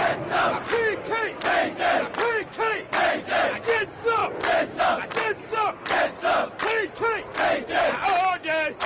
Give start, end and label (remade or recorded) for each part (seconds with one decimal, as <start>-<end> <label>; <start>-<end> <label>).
0.0-8.9 recorded